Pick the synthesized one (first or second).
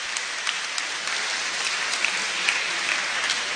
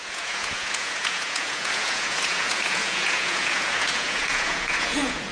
second